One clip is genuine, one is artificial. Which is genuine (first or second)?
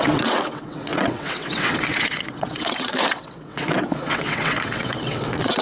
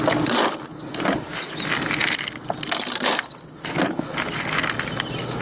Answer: second